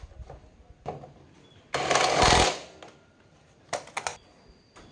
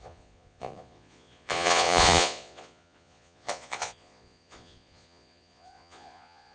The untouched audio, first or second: first